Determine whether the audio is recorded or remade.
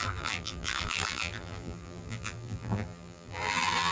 remade